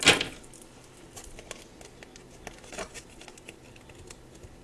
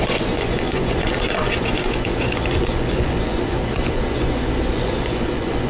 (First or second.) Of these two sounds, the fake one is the second